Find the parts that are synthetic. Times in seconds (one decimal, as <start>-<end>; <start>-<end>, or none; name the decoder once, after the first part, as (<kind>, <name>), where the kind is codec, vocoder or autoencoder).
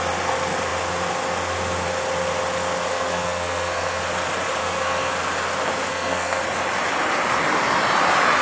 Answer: 2.9-4.0 (codec, SNAC); 4.6-5.1; 5.9-6.4